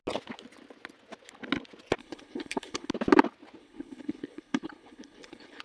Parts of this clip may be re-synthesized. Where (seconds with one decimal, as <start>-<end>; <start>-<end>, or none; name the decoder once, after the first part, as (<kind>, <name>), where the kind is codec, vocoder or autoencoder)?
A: 2.0-2.9 (codec, HILCodec); 3.6-5.6